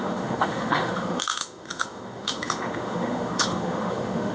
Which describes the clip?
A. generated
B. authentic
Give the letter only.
A